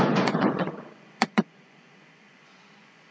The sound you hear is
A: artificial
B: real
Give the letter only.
A